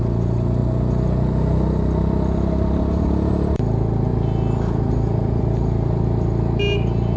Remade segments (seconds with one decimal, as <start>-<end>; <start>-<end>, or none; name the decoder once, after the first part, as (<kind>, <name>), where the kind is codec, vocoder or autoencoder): none